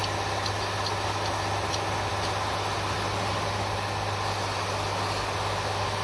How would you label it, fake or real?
real